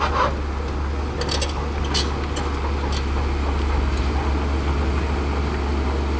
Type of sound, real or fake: real